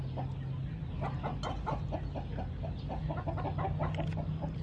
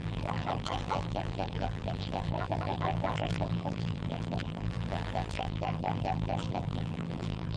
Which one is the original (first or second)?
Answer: first